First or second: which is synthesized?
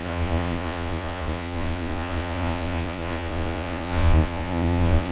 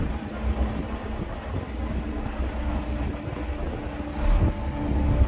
first